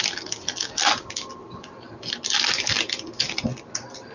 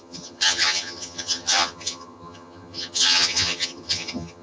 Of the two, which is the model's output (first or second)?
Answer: second